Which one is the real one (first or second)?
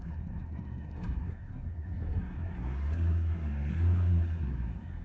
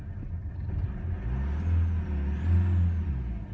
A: second